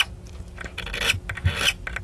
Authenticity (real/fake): real